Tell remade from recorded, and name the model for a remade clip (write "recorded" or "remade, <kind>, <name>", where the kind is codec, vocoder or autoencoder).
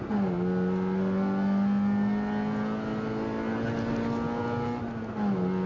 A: recorded